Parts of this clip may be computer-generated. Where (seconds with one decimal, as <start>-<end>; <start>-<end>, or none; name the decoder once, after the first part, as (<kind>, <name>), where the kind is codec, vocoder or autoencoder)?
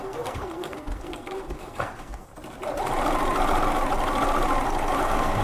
0.0-2.3 (codec, SNAC); 5.0-5.4